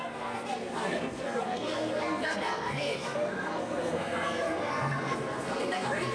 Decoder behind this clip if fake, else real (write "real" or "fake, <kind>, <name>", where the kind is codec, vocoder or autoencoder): fake, codec, SNAC